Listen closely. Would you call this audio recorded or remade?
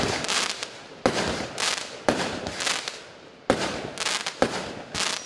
recorded